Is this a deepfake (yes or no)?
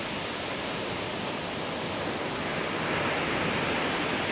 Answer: no